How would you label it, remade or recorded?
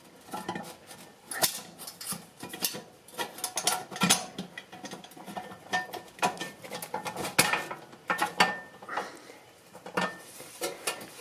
recorded